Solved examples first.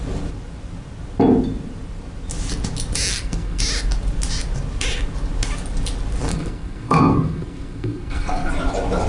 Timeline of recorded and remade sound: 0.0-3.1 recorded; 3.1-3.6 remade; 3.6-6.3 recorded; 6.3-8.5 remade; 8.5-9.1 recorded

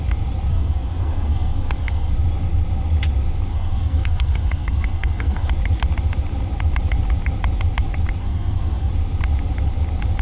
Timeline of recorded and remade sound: 0.0-0.5 recorded; 0.5-2.1 remade; 2.1-3.5 recorded; 3.5-5.5 remade; 5.5-8.2 recorded; 8.2-8.9 remade; 8.9-10.2 recorded

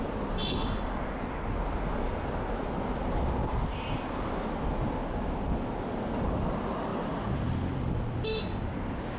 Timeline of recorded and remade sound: 0.0-9.2 recorded